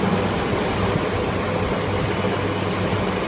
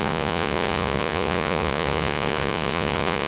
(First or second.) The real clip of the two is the first